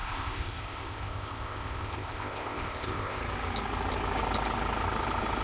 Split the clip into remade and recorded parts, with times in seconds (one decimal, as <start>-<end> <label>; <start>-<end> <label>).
0.0-3.2 remade; 3.2-5.4 recorded